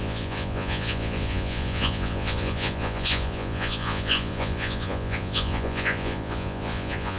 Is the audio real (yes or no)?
no